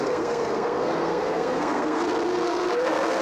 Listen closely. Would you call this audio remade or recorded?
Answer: remade